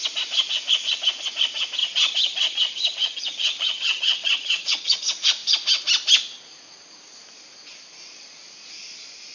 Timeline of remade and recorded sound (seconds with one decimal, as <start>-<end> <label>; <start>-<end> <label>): 0.0-1.8 recorded; 1.8-5.0 remade; 5.0-9.3 recorded